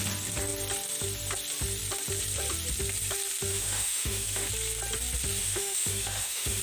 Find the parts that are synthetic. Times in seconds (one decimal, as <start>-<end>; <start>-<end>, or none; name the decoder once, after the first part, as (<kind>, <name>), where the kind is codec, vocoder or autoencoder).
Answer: 3.5-4.5 (autoencoder, DAC-VAE); 5.4-6.6